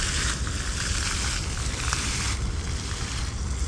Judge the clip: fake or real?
fake